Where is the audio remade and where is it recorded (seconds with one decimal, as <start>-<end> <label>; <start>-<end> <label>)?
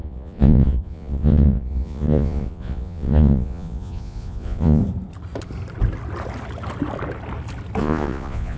0.0-4.8 remade; 4.8-7.8 recorded; 7.8-8.6 remade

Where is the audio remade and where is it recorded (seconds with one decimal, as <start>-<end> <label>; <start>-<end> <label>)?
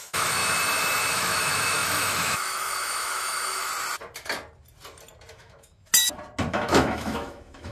0.0-0.4 remade; 0.4-1.1 recorded; 1.1-3.7 remade; 3.7-5.3 recorded; 5.3-5.9 remade; 5.9-6.5 recorded; 6.5-7.7 remade